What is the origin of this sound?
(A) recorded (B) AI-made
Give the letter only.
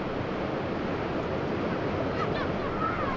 A